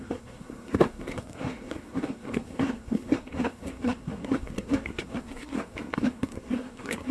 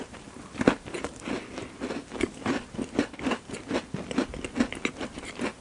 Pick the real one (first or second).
second